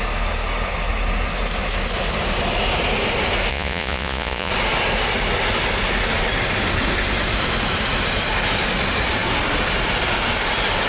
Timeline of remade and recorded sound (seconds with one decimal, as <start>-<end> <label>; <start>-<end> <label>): 0.0-3.5 recorded; 3.5-4.5 remade; 4.5-10.9 recorded